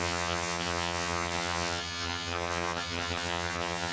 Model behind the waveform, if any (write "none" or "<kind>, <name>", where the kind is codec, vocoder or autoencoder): vocoder, HiFi-GAN